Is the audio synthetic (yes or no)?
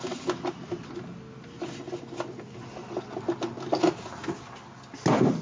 no